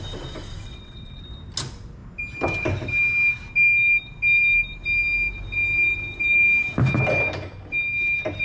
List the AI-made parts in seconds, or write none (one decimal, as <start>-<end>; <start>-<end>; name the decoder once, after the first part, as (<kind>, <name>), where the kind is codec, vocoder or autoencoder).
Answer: 0.6-1.2 (vocoder, WaveNeXt)